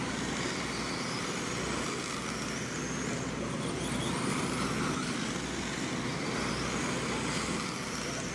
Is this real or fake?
real